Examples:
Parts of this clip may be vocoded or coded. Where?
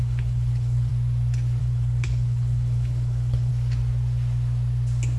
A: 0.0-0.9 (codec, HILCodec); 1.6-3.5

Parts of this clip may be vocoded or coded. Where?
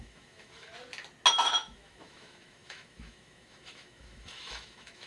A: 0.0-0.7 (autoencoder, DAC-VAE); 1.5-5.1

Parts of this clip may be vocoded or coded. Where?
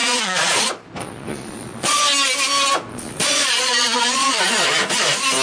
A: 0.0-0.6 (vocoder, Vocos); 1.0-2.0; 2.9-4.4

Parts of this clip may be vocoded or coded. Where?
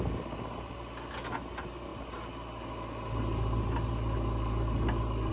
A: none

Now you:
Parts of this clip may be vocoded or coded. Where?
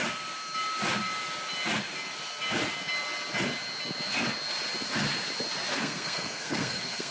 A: 5.7-7.1 (codec, SNAC)